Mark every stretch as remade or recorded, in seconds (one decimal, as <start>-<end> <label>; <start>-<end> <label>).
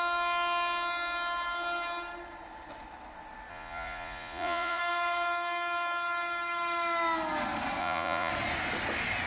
0.0-3.5 recorded; 3.5-4.8 remade; 4.8-7.8 recorded; 7.8-8.3 remade; 8.3-9.3 recorded